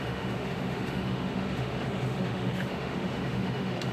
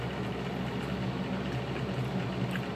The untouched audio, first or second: second